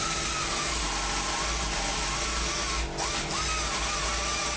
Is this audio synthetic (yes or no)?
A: no